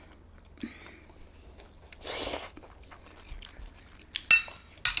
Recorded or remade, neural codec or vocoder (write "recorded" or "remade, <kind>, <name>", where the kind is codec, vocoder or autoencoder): recorded